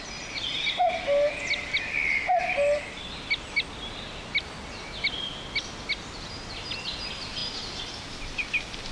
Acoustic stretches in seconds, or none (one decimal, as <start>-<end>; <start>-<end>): 0.0-8.9